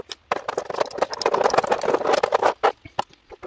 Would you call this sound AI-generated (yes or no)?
no